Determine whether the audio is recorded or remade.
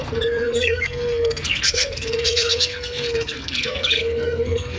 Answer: remade